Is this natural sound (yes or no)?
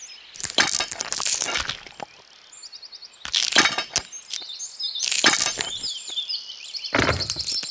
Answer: yes